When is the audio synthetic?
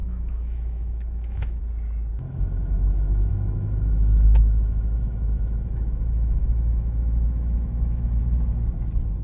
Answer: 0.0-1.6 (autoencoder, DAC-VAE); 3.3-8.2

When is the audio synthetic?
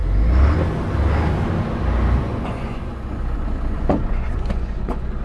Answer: 2.2-5.2 (vocoder, Vocos)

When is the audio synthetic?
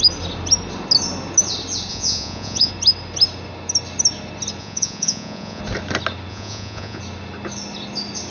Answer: 1.9-2.7 (vocoder, Vocos); 4.6-5.6; 6.3-7.0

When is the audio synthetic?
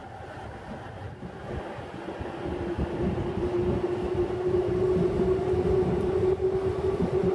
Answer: none